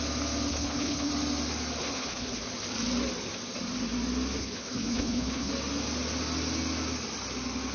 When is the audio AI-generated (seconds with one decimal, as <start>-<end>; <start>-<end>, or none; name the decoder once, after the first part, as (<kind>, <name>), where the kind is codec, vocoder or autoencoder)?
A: 0.5-1.1 (codec, HILCodec); 1.8-2.4; 4.4-5.5